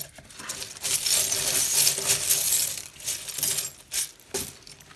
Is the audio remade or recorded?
recorded